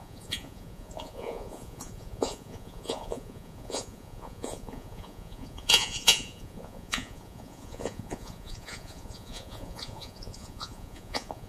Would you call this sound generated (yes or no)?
yes